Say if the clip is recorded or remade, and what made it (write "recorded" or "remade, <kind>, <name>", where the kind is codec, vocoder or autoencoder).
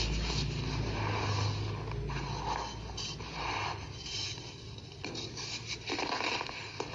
recorded